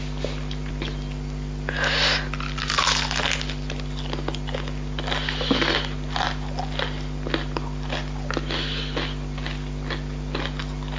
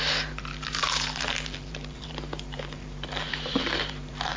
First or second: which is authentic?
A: first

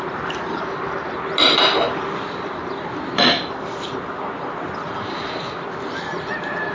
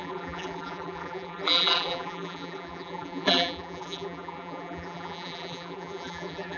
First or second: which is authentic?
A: first